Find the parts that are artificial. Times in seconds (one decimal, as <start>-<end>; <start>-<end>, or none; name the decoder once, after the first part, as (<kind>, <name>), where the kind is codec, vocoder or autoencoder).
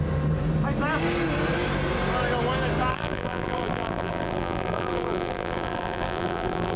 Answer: 2.9-6.8 (vocoder, BigVGAN v2)